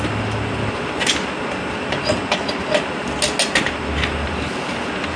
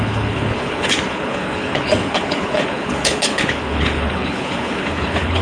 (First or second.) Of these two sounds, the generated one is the second